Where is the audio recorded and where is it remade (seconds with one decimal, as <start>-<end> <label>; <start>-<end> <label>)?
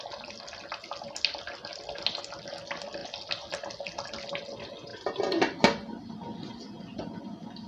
0.0-7.7 recorded